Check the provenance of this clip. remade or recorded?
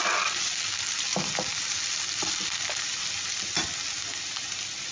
recorded